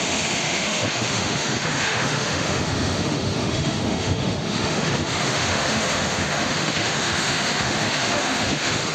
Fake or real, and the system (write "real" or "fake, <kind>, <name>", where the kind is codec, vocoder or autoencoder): fake, autoencoder, DAC-VAE